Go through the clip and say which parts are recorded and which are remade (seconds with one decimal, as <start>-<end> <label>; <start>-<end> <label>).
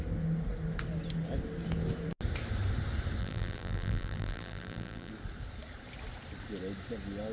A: 0.0-3.2 recorded; 3.2-5.1 remade; 5.1-7.3 recorded